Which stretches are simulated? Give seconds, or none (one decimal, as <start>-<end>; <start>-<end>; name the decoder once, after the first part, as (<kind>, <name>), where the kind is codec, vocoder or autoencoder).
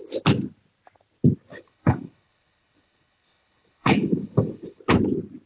1.5-4.8 (codec, HILCodec)